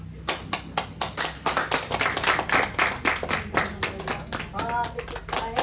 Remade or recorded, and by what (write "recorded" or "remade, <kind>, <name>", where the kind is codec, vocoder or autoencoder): recorded